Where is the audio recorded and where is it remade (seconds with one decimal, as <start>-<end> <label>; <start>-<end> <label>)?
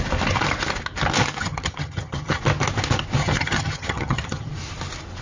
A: 0.0-1.4 recorded; 1.4-2.4 remade; 2.4-3.2 recorded; 3.2-4.5 remade; 4.5-5.2 recorded